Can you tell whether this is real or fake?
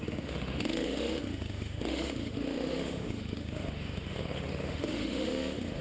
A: fake